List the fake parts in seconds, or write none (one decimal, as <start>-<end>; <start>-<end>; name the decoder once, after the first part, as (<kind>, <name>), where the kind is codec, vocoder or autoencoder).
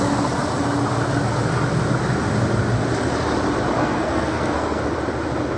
3.8-4.8 (codec, SNAC)